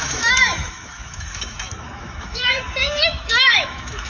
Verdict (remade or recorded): remade